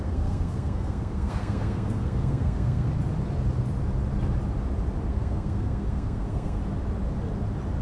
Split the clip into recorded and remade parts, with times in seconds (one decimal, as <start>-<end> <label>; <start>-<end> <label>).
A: 0.0-2.9 remade; 2.9-5.1 recorded; 5.1-6.6 remade; 6.6-7.8 recorded